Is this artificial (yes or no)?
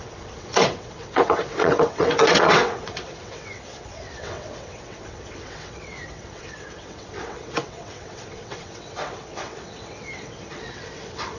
yes